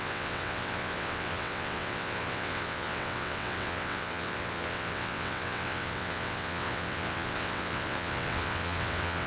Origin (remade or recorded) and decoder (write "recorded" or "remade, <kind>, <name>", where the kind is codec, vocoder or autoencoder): remade, vocoder, WaveNeXt